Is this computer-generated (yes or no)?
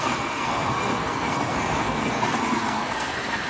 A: yes